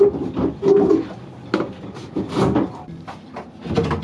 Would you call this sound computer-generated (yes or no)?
no